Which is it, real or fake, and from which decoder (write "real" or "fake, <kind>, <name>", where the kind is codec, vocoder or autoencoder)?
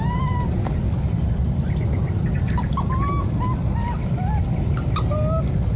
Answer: real